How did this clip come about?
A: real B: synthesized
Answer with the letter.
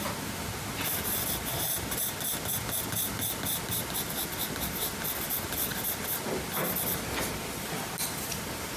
A